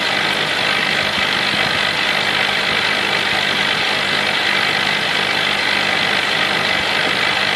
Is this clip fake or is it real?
real